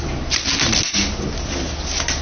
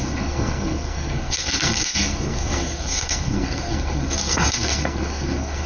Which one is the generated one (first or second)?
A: second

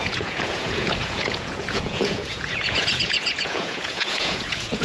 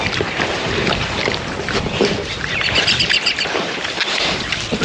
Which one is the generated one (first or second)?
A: first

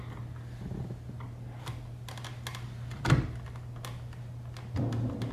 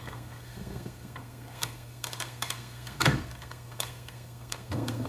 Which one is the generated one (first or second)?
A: second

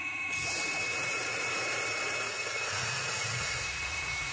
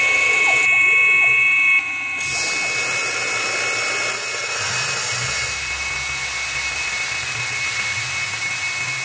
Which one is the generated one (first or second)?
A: first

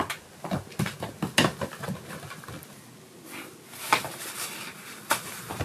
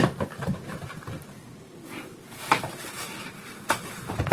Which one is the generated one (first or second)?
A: second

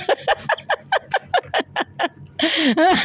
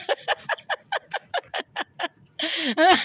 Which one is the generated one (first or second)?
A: second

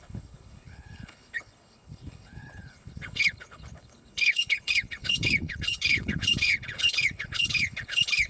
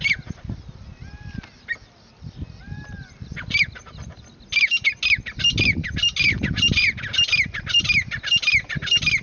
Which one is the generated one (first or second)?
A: first